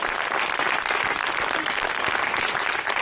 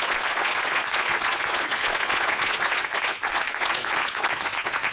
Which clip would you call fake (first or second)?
second